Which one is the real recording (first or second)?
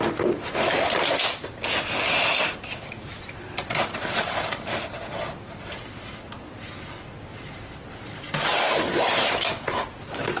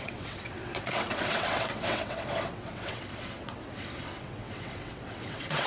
first